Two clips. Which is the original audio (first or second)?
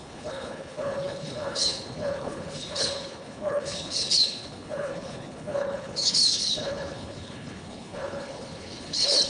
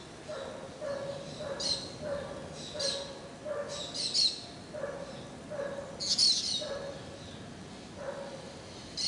second